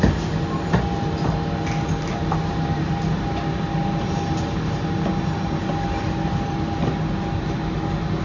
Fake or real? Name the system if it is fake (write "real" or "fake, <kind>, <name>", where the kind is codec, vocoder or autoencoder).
real